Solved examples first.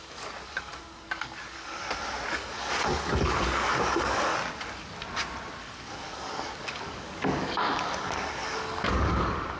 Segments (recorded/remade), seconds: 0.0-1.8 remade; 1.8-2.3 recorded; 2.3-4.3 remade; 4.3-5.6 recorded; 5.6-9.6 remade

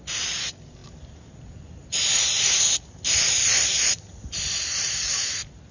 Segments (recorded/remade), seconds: 0.0-5.7 recorded